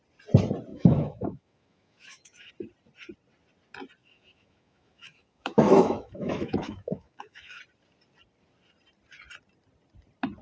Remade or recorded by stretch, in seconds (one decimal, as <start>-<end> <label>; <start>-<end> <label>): 0.0-0.7 recorded; 0.7-2.5 remade; 2.5-4.0 recorded; 4.0-7.6 remade; 7.6-10.4 recorded